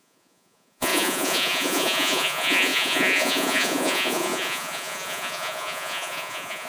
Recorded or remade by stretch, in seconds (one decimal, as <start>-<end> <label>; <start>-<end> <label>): 0.0-6.7 remade